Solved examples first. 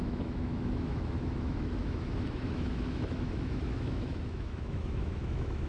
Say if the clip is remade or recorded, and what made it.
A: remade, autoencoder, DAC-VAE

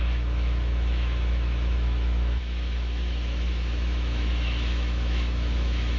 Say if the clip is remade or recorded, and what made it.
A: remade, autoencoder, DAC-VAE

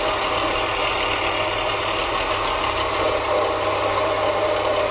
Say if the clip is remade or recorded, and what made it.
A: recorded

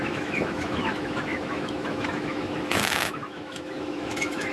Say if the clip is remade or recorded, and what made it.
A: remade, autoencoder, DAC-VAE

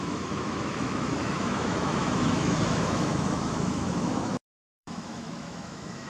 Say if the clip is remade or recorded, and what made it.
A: remade, autoencoder, DAC-VAE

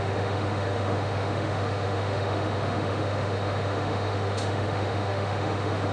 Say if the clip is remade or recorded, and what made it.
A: remade, autoencoder, DAC-VAE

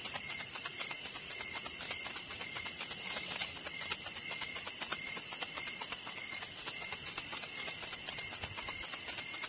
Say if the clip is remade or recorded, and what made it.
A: recorded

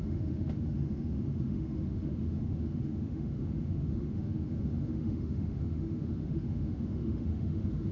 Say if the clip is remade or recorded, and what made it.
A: remade, autoencoder, DAC-VAE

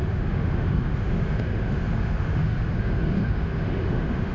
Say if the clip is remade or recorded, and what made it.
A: remade, autoencoder, DAC-VAE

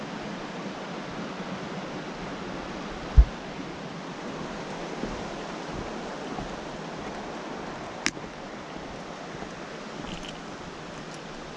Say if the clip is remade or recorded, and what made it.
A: recorded